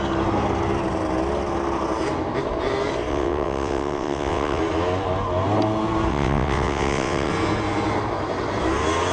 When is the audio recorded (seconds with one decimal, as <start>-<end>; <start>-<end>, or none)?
0.0-3.1; 4.6-6.1; 7.3-9.1